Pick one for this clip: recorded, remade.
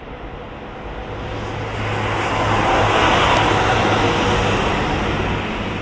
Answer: recorded